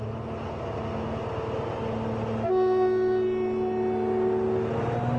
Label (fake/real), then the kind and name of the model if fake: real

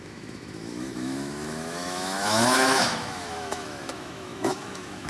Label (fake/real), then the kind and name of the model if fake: fake, autoencoder, DAC-VAE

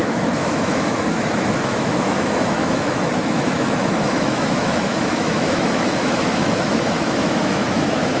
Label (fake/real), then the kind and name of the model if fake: fake, autoencoder, DAC-VAE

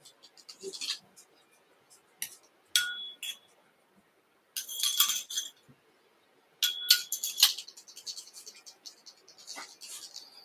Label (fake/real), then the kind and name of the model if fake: real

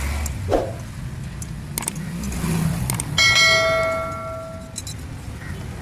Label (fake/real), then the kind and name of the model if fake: real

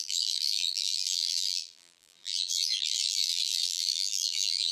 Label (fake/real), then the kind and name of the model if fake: fake, vocoder, BigVGAN v2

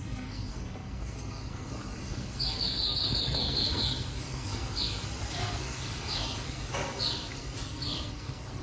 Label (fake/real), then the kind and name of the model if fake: fake, codec, SNAC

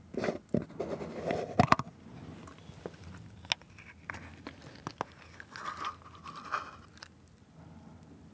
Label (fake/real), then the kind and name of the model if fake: real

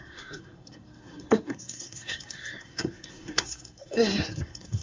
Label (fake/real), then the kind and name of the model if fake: fake, codec, SNAC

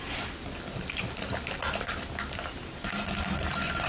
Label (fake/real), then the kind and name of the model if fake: real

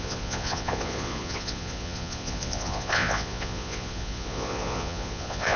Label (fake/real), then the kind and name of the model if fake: fake, vocoder, Vocos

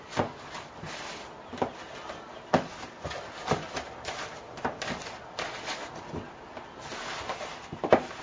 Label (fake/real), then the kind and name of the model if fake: real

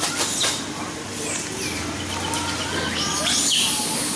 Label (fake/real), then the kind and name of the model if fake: real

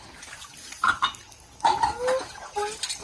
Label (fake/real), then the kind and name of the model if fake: real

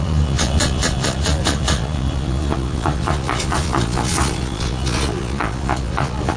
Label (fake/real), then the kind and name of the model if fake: fake, vocoder, Vocos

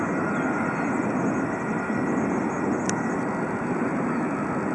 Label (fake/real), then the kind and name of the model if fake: real